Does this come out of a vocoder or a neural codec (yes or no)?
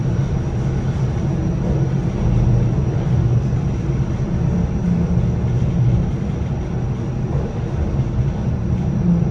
no